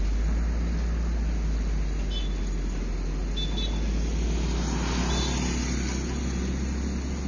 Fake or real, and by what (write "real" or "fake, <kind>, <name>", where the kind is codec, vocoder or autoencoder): real